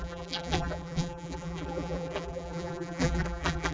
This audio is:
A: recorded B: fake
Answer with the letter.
B